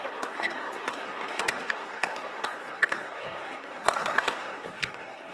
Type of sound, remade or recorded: remade